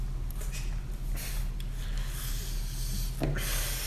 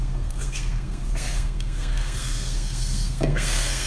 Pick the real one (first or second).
first